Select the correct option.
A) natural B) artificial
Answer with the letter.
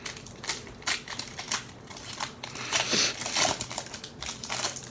A